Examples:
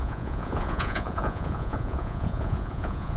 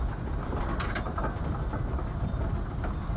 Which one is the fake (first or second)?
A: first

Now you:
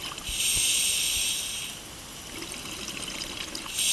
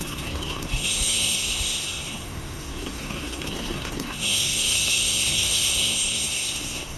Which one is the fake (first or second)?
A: second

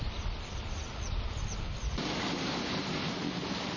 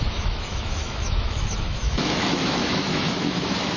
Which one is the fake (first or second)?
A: second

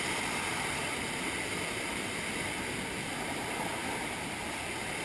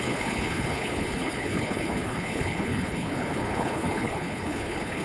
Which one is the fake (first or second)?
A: second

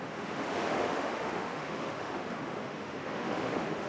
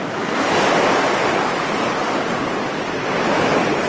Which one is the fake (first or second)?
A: first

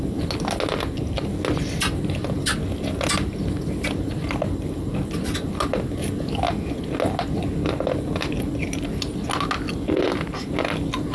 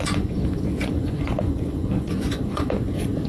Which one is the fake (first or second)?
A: second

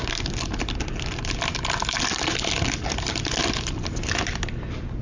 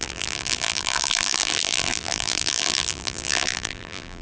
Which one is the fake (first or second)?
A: second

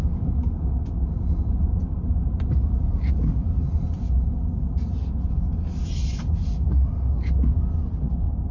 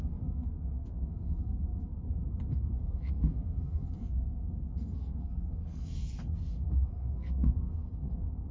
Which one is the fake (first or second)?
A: second